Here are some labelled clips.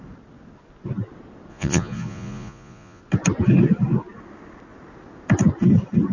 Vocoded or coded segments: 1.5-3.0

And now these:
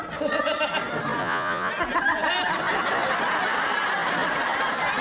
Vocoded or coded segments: 1.2-1.7

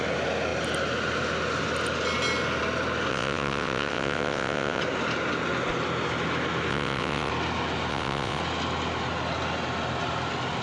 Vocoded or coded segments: 3.1-4.8; 6.7-7.3; 7.9-8.4

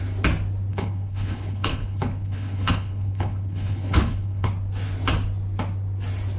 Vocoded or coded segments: 0.7-4.5

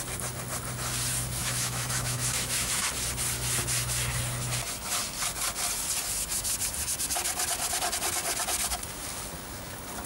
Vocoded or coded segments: 1.4-2.8

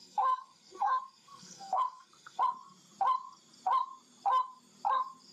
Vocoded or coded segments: 0.0-2.4

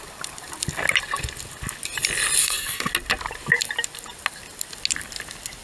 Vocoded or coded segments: 2.4-2.9

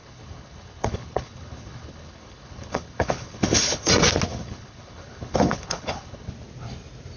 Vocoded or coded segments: 0.0-3.9; 4.3-6.3